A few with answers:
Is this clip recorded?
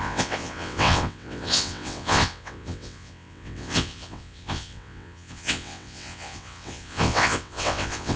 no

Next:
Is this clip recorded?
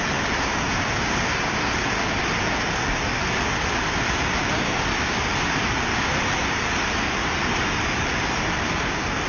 yes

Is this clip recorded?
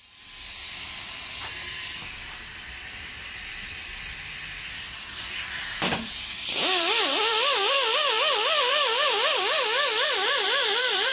no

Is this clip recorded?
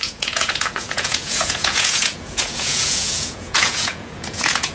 no